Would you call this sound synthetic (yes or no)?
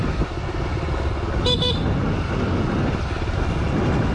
no